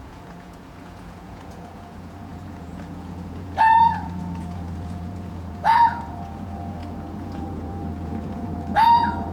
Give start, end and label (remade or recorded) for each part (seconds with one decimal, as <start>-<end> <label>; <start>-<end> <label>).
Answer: 0.0-9.3 remade